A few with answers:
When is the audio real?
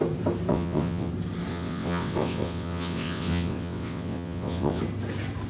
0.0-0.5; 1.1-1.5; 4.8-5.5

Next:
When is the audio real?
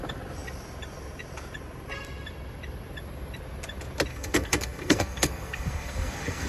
0.0-4.1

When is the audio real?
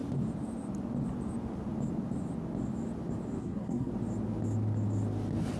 0.0-3.4; 3.9-5.6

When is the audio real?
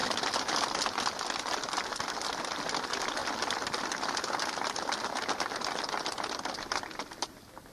0.0-7.7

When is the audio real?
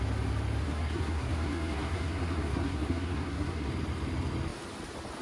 0.0-0.6; 3.7-5.2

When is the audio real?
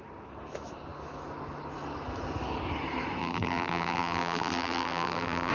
0.0-3.2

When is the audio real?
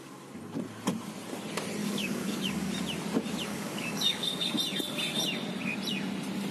0.0-1.8; 2.7-3.5; 4.5-6.5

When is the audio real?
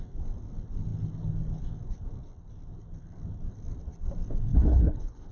0.0-4.5